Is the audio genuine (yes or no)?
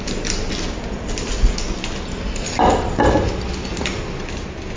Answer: yes